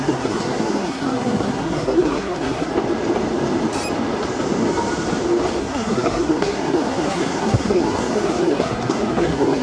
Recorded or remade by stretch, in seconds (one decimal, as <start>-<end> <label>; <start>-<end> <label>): 0.0-2.7 remade; 2.7-5.6 recorded; 5.6-9.6 remade